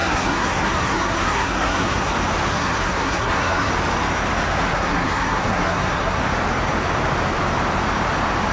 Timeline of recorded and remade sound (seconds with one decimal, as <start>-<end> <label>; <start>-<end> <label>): 0.0-2.1 remade; 2.1-2.5 recorded; 2.5-3.7 remade; 3.7-4.7 recorded; 4.7-6.2 remade; 6.2-8.5 recorded